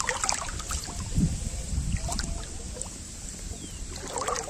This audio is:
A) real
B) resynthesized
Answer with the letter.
A